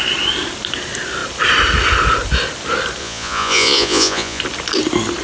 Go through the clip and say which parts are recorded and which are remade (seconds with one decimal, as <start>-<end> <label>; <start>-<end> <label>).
0.0-3.0 recorded; 3.0-4.4 remade; 4.4-5.2 recorded